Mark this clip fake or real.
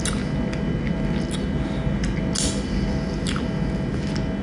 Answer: real